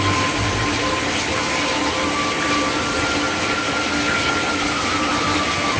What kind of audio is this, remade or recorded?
recorded